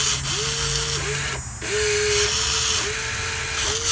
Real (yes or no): yes